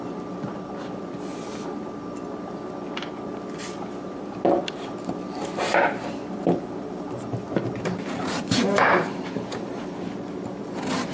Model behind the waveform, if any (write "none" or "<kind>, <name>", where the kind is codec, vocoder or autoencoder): none